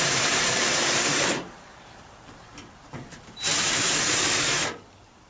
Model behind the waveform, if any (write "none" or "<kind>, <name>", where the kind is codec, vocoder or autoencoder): vocoder, BigVGAN v2